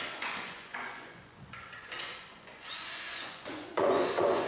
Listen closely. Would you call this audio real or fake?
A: fake